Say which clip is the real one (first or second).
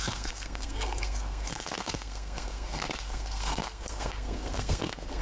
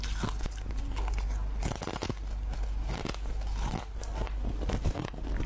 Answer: second